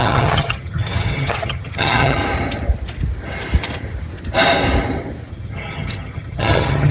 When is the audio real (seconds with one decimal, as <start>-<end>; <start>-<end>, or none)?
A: 2.2-5.3